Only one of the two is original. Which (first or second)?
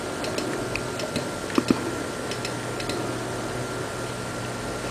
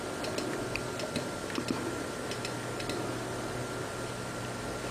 first